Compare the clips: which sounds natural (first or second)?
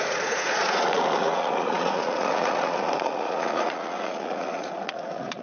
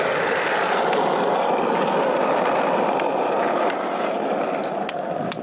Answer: second